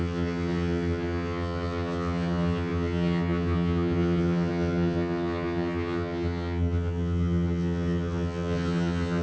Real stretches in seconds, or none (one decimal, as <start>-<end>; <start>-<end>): none